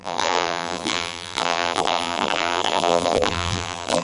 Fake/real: fake